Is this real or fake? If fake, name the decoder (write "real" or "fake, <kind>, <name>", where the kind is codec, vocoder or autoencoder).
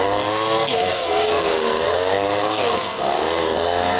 fake, codec, SNAC